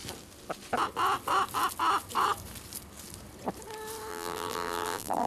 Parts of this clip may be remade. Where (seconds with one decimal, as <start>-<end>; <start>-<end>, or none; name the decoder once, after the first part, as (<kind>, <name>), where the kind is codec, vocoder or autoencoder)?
4.1-5.3 (vocoder, BigVGAN v2)